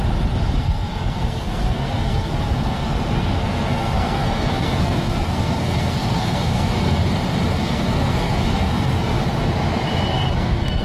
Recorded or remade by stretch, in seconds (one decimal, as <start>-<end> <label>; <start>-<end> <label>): 0.0-0.6 recorded; 0.6-7.0 remade; 7.0-7.5 recorded; 7.5-9.1 remade; 9.1-10.1 recorded; 10.1-10.8 remade